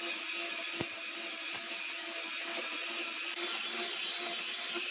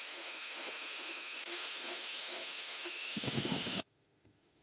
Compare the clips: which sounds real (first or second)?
first